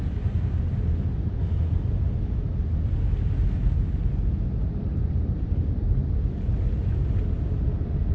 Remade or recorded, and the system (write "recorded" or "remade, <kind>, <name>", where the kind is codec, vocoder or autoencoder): recorded